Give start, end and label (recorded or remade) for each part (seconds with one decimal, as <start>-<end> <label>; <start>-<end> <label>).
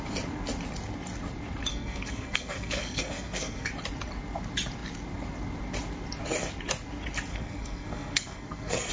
0.0-1.7 recorded; 1.7-3.7 remade; 3.7-7.3 recorded; 7.3-8.9 remade